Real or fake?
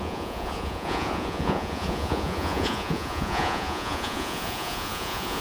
fake